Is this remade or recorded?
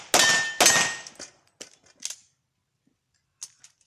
recorded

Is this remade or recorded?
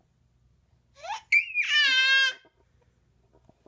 recorded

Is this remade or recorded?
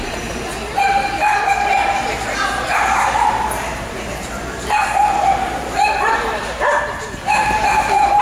remade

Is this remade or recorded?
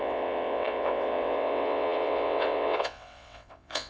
remade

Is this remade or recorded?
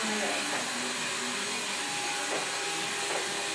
recorded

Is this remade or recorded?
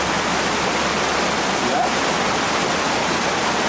recorded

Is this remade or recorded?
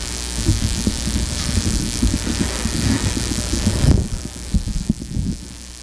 remade